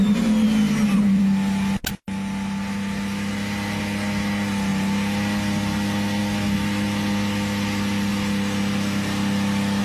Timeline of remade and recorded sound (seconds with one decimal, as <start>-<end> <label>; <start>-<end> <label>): 0.0-9.8 recorded